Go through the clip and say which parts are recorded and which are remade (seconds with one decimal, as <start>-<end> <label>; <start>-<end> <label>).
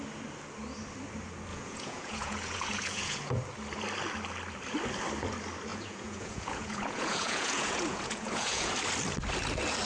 0.0-1.5 recorded; 1.5-3.3 remade; 3.3-5.7 recorded; 5.7-8.7 remade; 8.7-9.9 recorded